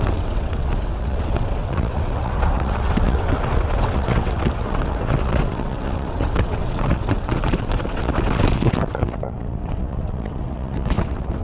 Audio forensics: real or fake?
fake